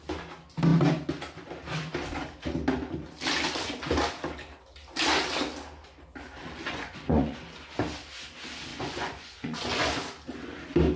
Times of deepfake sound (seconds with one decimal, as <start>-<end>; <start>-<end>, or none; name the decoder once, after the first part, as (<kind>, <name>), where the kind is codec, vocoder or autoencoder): 6.4-7.4 (vocoder, Vocos); 8.7-9.9